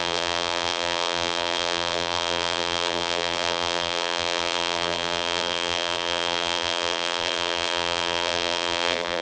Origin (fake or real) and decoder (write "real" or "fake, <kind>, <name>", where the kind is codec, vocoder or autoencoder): fake, vocoder, BigVGAN v2